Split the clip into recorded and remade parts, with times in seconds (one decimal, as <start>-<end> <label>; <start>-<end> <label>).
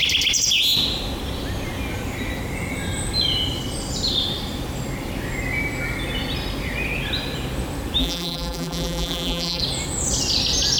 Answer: 0.0-8.0 recorded; 8.0-9.6 remade; 9.6-10.8 recorded